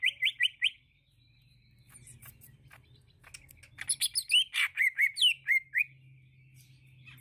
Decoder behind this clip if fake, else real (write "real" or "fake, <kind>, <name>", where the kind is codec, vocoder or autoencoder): real